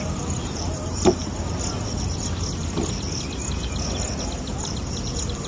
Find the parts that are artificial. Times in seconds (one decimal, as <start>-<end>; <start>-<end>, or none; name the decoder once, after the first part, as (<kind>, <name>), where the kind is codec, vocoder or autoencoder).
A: 0.0-1.4 (vocoder, BigVGAN v2); 4.5-5.5